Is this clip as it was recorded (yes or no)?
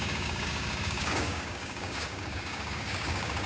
no